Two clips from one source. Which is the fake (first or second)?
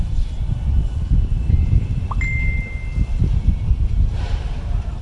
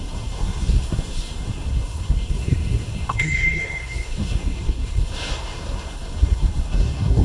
second